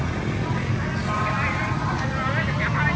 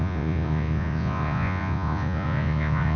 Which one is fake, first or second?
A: second